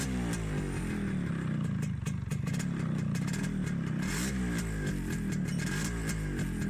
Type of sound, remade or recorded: recorded